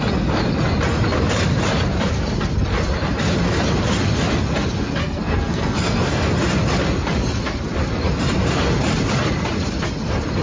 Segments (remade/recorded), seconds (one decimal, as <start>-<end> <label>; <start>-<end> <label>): 0.0-5.0 recorded; 5.0-6.3 remade; 6.3-10.4 recorded